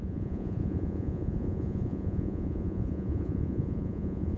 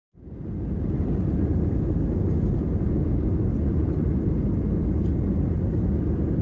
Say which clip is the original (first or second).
second